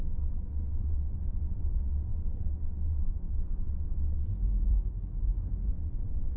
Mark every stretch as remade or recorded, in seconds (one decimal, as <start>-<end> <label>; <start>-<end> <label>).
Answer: 0.0-4.3 remade; 4.3-5.7 recorded; 5.7-6.4 remade